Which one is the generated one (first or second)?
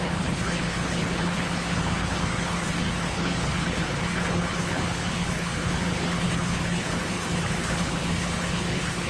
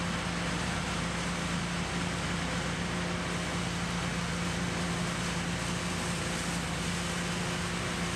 first